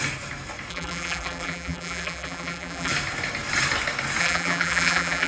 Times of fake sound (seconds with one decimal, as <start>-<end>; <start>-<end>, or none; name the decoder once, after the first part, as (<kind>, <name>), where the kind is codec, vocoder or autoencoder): 0.7-2.9 (vocoder, BigVGAN v2); 4.2-5.3

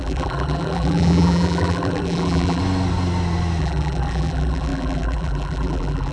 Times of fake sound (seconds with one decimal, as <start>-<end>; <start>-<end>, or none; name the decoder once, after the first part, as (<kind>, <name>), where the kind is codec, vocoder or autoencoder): 0.0-2.6 (vocoder, BigVGAN v2); 3.6-6.1

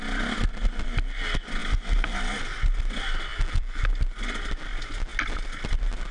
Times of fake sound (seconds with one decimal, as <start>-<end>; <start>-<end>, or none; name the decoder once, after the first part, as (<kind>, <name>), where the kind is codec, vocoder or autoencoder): 3.3-3.8 (vocoder, BigVGAN v2)

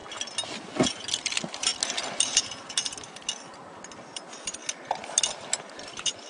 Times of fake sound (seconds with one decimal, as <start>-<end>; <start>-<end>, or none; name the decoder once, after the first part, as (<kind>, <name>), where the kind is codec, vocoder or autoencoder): 1.2-1.7 (vocoder, BigVGAN v2); 3.9-4.6; 5.6-6.3

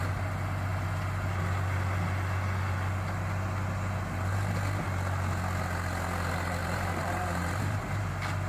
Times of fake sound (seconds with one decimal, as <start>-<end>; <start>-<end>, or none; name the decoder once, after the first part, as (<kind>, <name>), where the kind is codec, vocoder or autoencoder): 6.6-8.1 (vocoder, BigVGAN v2)

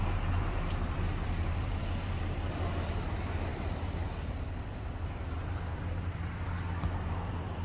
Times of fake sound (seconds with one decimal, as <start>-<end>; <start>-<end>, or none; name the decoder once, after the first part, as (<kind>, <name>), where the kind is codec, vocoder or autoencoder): 0.0-7.6 (vocoder, BigVGAN v2)

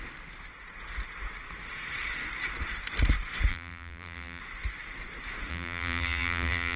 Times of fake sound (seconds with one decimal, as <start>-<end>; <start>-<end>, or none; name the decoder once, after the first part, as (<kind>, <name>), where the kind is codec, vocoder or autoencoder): 3.5-4.4 (vocoder, BigVGAN v2); 5.5-6.8

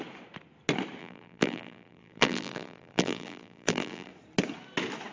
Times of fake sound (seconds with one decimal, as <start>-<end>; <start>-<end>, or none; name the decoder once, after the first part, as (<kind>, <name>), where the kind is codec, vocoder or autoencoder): 1.0-4.1 (vocoder, BigVGAN v2)